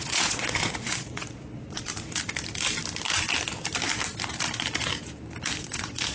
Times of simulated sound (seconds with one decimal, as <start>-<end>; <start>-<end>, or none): 0.0-1.9; 5.6-6.1